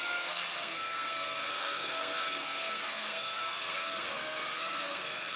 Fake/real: fake